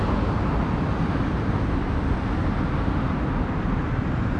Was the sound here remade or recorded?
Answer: recorded